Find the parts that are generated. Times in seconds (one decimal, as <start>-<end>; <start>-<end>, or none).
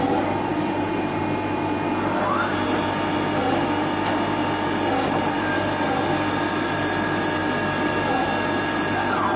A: 0.5-1.2